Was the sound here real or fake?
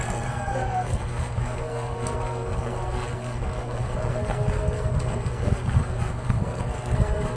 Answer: fake